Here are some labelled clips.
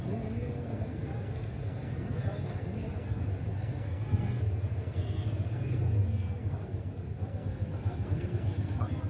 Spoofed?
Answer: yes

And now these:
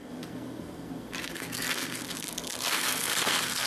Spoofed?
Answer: yes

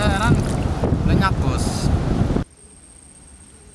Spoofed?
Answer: no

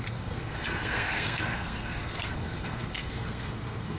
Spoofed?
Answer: yes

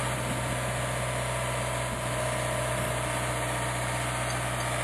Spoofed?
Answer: no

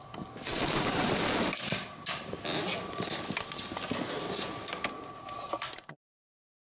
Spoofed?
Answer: no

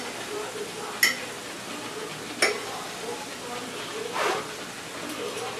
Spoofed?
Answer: no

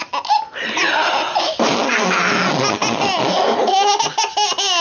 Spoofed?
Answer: no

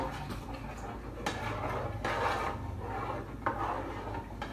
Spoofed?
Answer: no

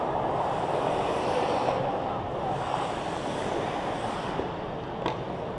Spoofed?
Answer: no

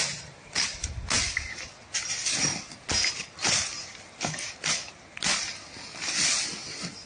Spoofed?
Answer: no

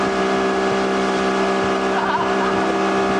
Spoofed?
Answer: no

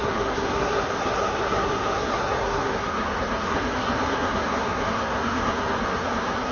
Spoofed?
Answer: yes